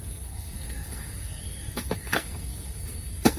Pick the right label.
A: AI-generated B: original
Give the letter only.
A